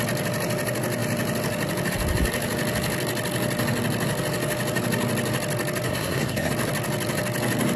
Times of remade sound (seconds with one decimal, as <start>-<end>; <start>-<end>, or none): 5.9-6.5